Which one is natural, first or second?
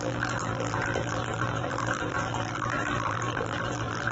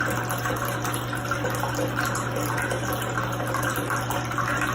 second